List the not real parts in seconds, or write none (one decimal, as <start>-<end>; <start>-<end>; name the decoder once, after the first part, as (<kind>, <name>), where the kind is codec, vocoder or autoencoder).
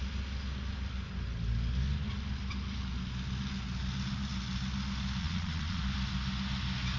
5.2-5.8 (vocoder, Vocos)